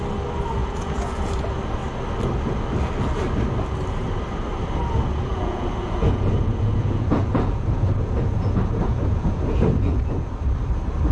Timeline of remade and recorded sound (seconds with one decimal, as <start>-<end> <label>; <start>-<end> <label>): 0.0-0.6 recorded; 0.6-1.3 remade; 1.3-5.3 recorded; 5.3-10.3 remade; 10.3-11.1 recorded